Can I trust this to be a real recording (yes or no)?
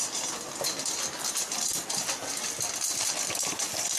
yes